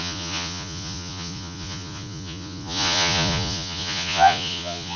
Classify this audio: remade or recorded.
remade